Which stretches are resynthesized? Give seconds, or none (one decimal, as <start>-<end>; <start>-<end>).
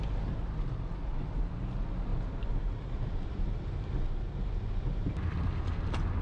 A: none